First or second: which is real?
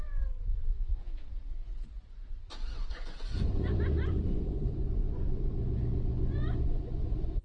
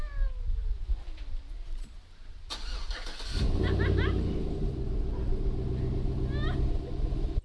second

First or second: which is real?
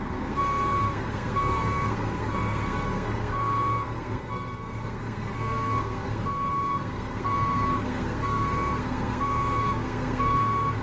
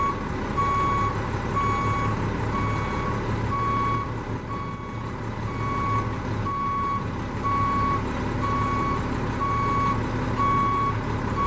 second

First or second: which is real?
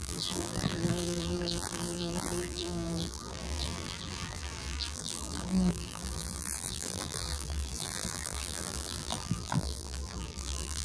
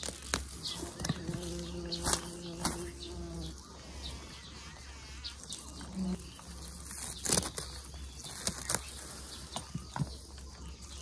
second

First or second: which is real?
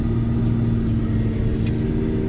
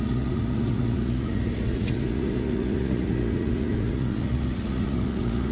first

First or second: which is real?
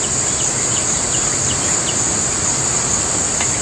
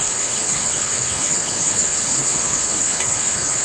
first